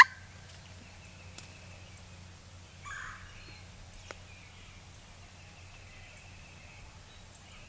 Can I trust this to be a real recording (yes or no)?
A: yes